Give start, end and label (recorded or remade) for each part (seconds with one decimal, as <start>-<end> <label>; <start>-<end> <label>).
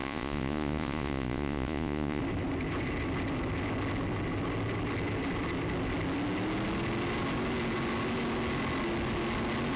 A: 0.0-2.2 remade; 2.2-9.8 recorded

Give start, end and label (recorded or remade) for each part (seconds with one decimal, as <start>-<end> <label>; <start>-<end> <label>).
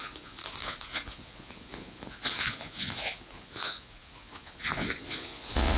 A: 0.0-5.8 remade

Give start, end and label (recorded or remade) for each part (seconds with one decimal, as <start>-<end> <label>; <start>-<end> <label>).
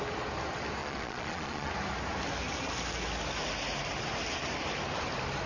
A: 0.0-0.8 recorded; 0.8-1.7 remade; 1.7-5.5 recorded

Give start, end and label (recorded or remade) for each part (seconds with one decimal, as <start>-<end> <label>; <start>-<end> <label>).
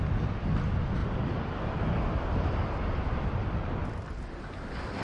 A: 0.0-5.0 recorded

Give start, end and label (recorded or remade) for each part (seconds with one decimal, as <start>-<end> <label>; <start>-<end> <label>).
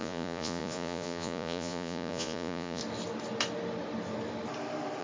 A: 0.0-2.8 remade; 2.8-5.0 recorded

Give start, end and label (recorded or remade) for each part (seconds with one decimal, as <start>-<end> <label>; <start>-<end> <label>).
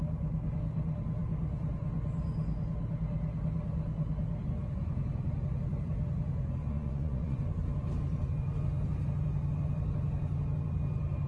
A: 0.0-6.6 recorded; 6.6-7.4 remade; 7.4-11.3 recorded